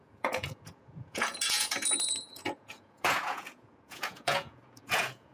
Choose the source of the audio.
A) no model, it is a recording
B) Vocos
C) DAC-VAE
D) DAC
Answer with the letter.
B